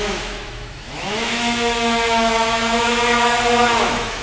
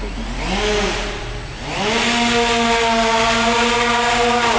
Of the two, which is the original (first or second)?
second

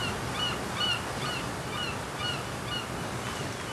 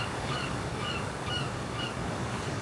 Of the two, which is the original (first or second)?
first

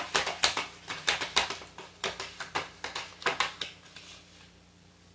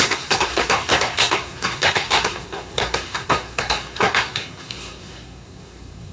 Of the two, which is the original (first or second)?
first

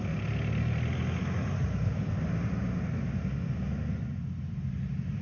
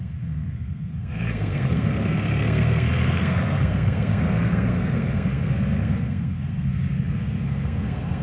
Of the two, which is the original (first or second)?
first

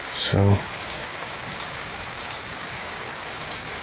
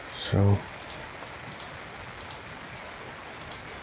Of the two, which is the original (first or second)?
second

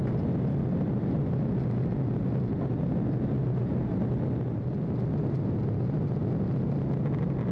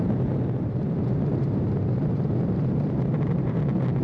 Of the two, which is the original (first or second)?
first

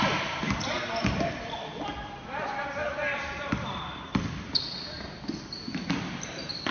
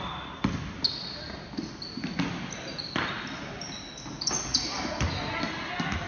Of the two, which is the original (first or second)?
second